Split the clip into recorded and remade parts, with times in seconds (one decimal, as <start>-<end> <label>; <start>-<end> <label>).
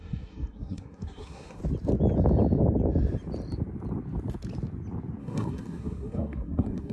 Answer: 0.0-1.6 remade; 1.6-5.2 recorded; 5.2-6.9 remade